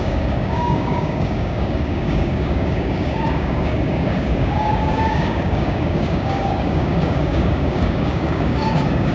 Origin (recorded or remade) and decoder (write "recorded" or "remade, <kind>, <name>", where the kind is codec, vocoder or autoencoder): remade, codec, DAC